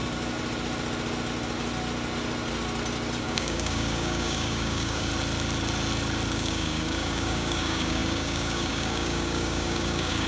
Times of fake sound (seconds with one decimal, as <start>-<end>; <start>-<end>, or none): 3.2-5.1; 6.3-10.3